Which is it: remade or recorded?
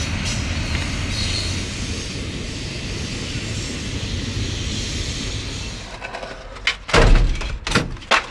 recorded